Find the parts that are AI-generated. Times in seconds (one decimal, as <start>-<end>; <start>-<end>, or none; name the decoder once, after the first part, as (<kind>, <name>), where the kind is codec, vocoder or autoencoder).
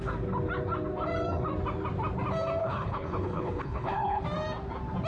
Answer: 2.6-4.2 (codec, HILCodec)